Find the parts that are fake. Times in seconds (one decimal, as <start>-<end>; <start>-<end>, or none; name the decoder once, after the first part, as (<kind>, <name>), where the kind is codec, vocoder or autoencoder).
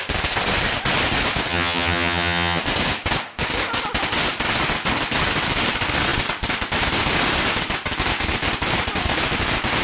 1.5-2.6 (vocoder, HiFi-GAN)